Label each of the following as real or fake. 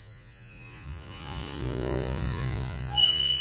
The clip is fake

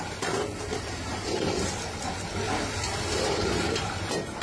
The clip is real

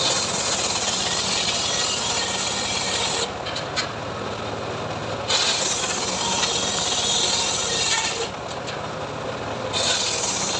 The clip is real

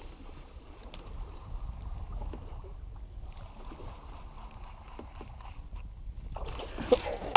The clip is real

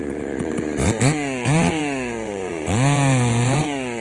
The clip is fake